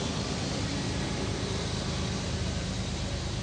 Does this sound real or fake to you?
real